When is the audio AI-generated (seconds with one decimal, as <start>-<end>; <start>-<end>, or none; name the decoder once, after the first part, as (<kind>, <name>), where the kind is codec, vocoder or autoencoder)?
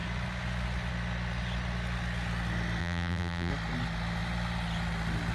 2.8-3.5 (vocoder, BigVGAN v2)